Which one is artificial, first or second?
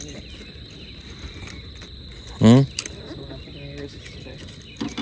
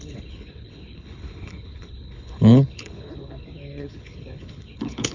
second